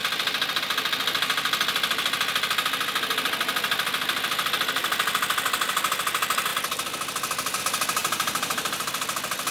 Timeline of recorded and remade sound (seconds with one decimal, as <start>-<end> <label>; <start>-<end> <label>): 0.0-8.0 recorded; 8.0-8.9 remade; 8.9-9.5 recorded